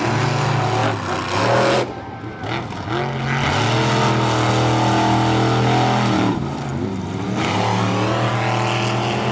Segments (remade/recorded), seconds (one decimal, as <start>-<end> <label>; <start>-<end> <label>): 0.0-9.3 recorded